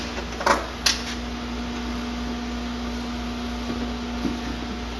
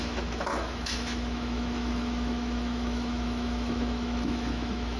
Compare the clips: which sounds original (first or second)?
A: first